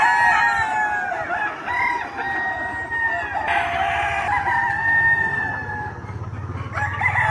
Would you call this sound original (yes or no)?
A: yes